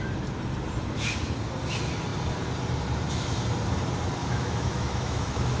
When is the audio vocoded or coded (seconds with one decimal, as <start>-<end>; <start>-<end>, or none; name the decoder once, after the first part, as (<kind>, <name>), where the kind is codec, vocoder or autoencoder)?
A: 4.2-5.6 (autoencoder, DAC-VAE)